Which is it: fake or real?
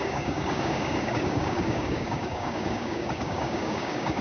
fake